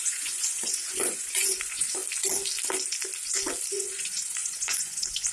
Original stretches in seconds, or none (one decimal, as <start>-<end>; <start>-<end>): 2.0-3.7